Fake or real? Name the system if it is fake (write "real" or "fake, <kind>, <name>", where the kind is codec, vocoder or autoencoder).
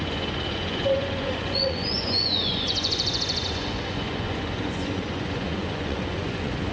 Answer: fake, vocoder, Vocos